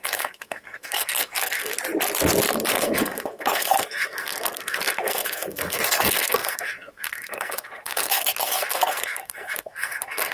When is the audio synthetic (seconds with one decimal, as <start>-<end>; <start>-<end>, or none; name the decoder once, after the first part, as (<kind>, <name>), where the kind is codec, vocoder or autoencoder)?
0.0-1.7 (codec, SNAC); 2.7-10.3